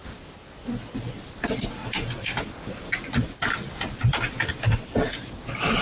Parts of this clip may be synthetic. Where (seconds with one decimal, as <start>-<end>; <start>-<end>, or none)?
1.8-5.3